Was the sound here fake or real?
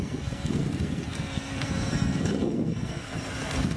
fake